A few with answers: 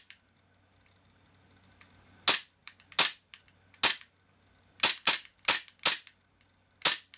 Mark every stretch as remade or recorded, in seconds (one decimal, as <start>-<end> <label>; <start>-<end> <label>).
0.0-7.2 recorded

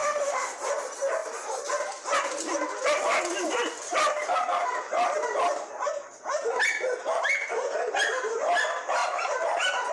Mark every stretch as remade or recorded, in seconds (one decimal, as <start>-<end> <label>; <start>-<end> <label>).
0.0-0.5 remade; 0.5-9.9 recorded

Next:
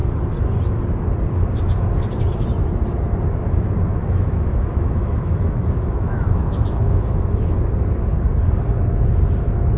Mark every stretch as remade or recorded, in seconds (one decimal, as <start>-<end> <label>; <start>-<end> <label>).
0.0-3.9 recorded; 3.9-7.5 remade; 7.5-9.8 recorded

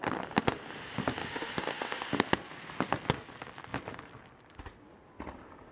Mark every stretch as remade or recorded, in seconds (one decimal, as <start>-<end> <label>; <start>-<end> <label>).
0.0-1.2 recorded; 1.2-2.0 remade; 2.0-5.7 recorded

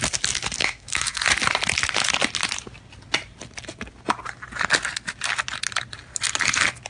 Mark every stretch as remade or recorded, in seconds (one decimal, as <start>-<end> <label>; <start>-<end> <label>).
0.0-0.6 recorded; 0.6-1.2 remade; 1.2-6.9 recorded

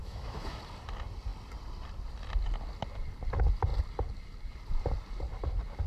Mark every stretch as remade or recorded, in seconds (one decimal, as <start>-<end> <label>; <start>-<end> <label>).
0.0-0.6 remade; 0.6-5.9 recorded